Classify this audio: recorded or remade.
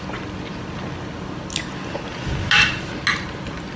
recorded